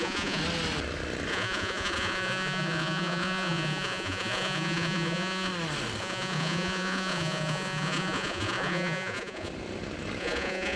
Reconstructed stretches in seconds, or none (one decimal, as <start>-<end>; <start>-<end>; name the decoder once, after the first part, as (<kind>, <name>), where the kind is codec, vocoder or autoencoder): 0.0-0.4 (vocoder, Vocos); 1.3-5.5; 6.0-9.5; 10.2-10.8